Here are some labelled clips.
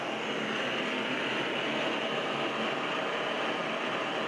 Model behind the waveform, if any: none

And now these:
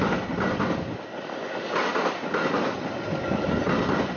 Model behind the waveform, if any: none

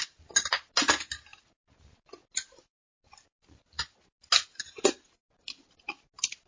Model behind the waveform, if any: none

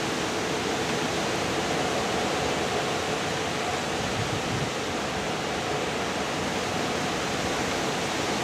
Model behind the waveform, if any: none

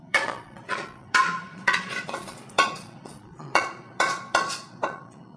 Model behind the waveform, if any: vocoder, Vocos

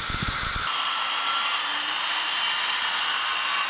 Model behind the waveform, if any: none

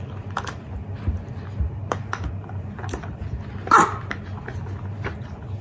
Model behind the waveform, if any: none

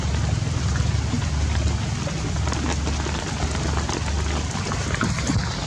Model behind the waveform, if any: none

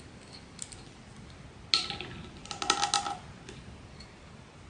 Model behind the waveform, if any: none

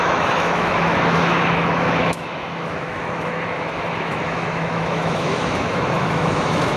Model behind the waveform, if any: autoencoder, DAC-VAE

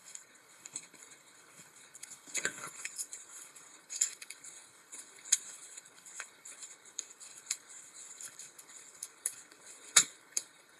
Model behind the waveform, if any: codec, HILCodec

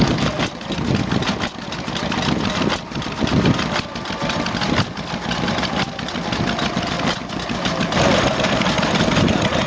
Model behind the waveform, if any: none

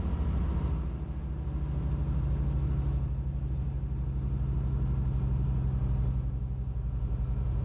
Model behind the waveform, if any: none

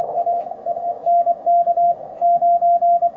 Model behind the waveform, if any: autoencoder, DAC-VAE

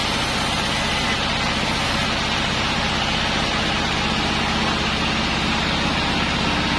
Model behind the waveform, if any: none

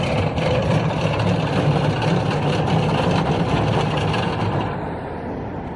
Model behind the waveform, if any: vocoder, BigVGAN v2